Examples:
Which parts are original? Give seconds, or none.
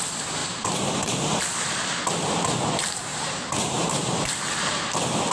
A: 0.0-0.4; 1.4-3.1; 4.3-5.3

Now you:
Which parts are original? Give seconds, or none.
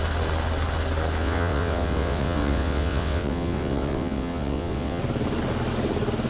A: 0.0-1.2; 5.0-6.3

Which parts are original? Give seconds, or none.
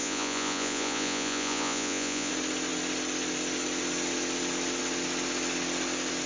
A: 2.3-6.3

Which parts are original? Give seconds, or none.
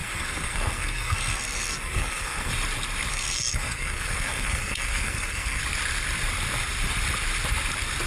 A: 2.5-3.1; 5.6-8.1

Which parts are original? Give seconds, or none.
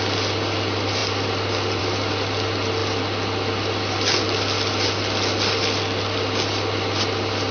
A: 0.0-7.5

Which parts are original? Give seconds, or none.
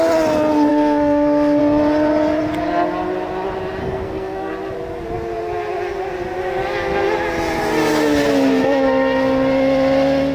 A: 0.0-0.7; 1.6-3.8; 4.5-10.3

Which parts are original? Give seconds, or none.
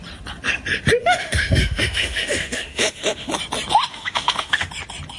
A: 0.0-1.0; 3.3-3.9; 4.7-5.2